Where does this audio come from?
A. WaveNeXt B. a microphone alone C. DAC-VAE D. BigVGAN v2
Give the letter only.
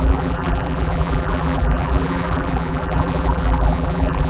D